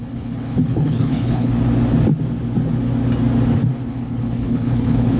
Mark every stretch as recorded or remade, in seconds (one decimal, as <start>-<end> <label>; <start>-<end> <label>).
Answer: 0.0-1.5 remade; 1.5-3.9 recorded; 3.9-5.2 remade